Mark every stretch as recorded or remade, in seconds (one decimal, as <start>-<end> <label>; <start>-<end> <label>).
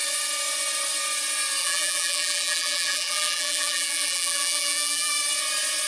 0.0-1.6 recorded; 1.6-5.1 remade; 5.1-5.9 recorded